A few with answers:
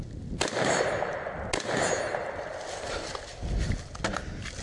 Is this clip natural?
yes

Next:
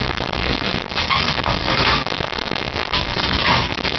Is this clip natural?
no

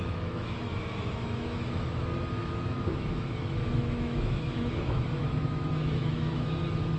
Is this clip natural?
no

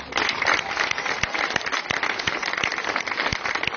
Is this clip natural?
no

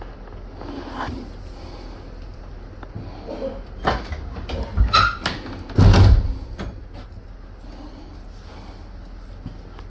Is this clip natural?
yes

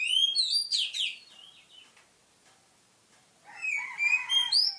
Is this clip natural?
yes